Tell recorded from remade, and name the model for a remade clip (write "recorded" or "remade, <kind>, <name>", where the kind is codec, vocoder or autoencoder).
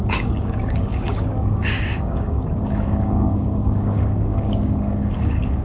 remade, codec, DAC